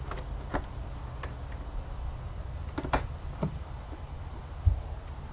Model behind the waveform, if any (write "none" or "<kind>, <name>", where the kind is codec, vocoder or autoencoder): none